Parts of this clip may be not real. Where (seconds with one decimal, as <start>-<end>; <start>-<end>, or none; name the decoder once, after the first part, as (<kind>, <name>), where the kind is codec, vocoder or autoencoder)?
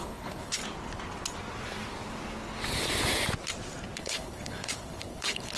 0.0-0.6 (codec, HILCodec); 4.0-5.6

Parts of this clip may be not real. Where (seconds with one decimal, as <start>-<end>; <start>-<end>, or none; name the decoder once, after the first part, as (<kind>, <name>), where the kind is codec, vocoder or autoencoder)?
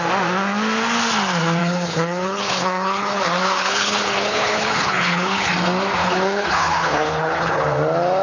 1.6-5.5 (codec, HILCodec); 6.0-7.6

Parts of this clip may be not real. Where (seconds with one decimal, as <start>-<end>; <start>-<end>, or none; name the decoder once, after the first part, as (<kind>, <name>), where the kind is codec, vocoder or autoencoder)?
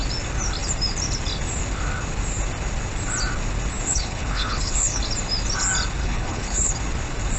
3.9-5.0 (codec, HILCodec); 6.0-6.7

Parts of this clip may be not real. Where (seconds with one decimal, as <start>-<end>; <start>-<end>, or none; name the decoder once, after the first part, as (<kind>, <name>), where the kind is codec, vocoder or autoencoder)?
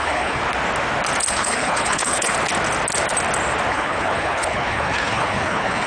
0.0-0.4 (codec, HILCodec); 1.3-2.3; 3.7-5.9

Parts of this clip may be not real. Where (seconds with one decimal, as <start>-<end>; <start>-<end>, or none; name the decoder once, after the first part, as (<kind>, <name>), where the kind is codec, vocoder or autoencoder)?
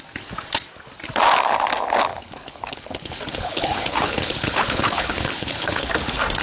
2.1-5.9 (codec, HILCodec)